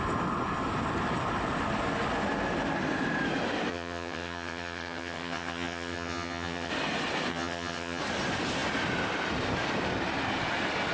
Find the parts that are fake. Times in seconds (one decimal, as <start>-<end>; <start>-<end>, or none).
3.7-6.7; 7.3-8.0